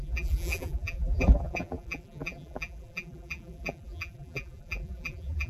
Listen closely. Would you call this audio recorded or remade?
remade